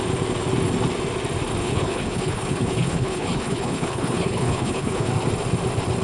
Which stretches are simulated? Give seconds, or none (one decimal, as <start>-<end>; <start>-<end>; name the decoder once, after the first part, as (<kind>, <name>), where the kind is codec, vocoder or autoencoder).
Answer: 1.6-5.1 (codec, HILCodec)